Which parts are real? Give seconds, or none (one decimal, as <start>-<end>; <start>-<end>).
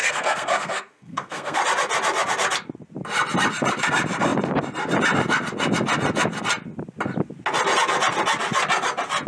1.6-9.3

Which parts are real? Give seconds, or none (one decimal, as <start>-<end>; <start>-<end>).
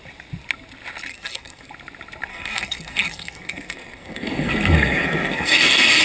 0.0-1.1; 1.7-2.3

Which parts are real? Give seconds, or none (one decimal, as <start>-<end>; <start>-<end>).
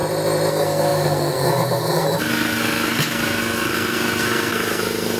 0.0-0.5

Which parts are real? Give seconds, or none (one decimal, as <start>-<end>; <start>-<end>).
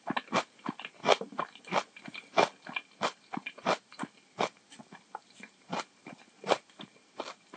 0.0-7.6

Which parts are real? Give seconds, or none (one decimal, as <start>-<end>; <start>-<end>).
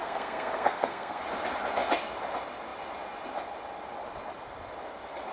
1.2-5.3